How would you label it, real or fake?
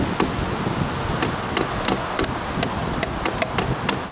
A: real